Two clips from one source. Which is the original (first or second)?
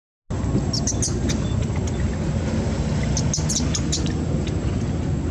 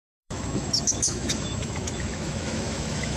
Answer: first